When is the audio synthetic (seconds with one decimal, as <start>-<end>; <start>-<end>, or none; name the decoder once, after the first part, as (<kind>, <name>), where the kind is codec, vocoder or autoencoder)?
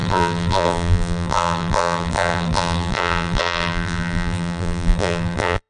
0.0-5.7 (vocoder, BigVGAN v2)